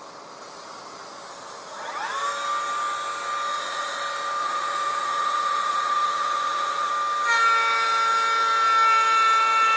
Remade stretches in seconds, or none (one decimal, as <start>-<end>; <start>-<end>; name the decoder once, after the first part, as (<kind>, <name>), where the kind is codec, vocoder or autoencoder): 3.5-4.0 (vocoder, Vocos); 4.4-6.9